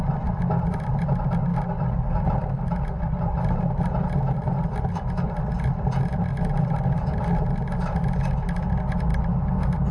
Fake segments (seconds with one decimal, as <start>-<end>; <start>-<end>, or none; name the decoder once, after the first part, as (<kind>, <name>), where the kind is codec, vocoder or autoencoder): none